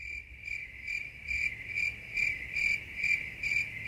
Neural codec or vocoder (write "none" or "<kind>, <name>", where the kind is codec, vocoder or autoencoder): none